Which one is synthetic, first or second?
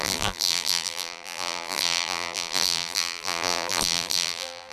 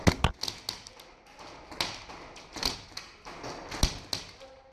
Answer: first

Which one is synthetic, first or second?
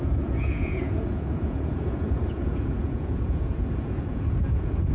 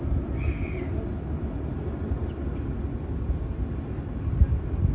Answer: first